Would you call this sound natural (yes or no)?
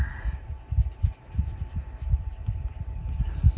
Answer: yes